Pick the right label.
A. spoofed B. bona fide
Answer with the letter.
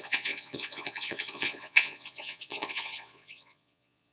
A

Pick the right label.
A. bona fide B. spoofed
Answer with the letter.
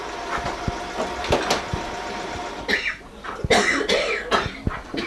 A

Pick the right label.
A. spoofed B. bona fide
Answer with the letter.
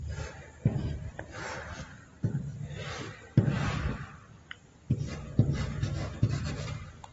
B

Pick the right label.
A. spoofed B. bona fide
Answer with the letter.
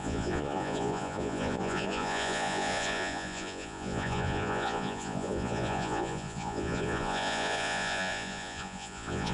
A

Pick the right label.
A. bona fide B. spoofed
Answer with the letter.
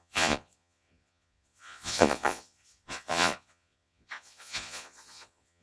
B